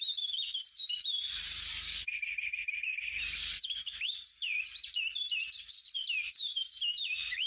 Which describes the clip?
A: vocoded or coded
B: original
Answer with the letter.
A